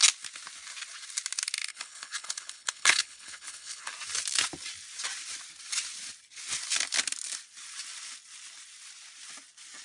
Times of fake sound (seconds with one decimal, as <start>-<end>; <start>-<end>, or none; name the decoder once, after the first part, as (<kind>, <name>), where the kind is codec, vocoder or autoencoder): 1.7-3.9 (codec, HILCodec)

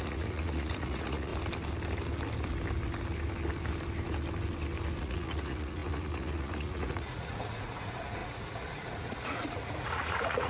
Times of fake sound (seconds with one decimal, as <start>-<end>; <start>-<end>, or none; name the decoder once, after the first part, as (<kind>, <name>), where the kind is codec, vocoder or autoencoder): 0.0-1.3 (vocoder, Vocos); 5.0-10.5

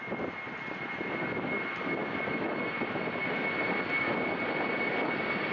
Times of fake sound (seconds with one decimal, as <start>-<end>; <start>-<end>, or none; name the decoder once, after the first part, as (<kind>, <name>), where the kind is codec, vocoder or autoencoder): none

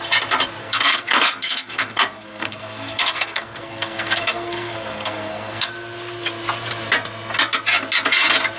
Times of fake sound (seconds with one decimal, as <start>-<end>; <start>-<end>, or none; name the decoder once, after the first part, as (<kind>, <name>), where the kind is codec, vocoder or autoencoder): 0.6-5.7 (codec, SNAC)

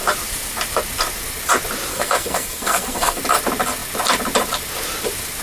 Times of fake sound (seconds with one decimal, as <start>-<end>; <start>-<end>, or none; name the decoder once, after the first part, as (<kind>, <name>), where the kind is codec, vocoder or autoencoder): 1.9-3.2 (codec, SNAC)

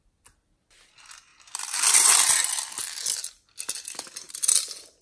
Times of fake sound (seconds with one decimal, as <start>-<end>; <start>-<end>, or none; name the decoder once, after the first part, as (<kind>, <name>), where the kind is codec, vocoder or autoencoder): none

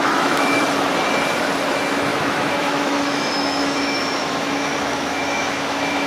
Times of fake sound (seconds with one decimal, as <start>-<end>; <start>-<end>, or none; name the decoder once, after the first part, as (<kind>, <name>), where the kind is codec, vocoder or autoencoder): 0.0-0.6 (autoencoder, DAC-VAE); 2.1-6.1

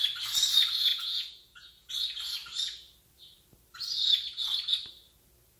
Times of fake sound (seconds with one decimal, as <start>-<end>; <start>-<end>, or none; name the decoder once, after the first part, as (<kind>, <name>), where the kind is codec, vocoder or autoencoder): 0.9-1.9 (vocoder, Vocos)